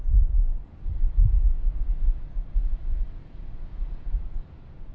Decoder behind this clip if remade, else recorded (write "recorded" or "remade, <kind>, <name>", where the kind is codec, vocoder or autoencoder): remade, vocoder, Vocos